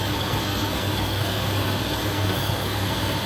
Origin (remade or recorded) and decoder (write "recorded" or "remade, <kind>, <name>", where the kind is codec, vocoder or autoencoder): remade, codec, SNAC